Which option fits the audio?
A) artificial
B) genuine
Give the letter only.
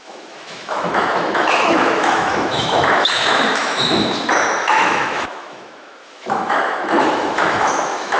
A